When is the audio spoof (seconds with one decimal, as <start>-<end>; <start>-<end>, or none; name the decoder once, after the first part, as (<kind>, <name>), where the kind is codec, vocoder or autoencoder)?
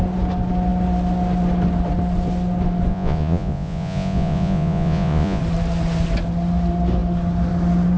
2.9-5.4 (vocoder, Vocos)